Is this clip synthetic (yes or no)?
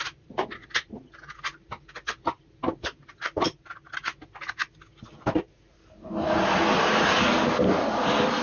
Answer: no